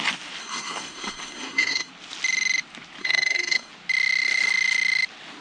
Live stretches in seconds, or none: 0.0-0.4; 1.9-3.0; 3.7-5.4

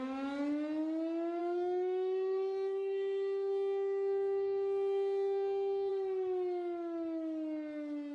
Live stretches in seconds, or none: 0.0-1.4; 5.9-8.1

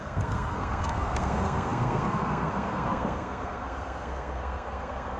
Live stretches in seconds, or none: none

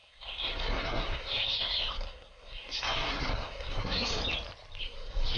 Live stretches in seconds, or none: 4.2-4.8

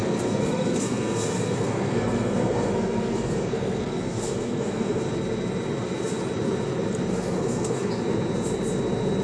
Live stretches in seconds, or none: 5.0-7.1; 7.9-9.2

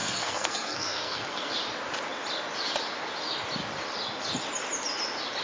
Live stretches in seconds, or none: 1.5-5.4

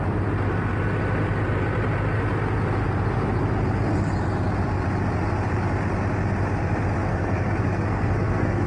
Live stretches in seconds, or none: 0.0-7.1

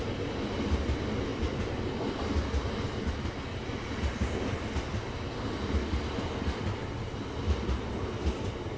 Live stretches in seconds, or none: 0.0-8.8